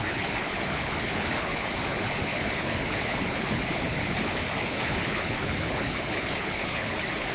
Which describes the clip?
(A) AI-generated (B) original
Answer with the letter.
A